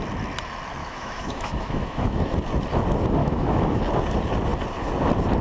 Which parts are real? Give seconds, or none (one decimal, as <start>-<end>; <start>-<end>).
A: 0.0-0.8; 2.2-3.2; 3.8-5.4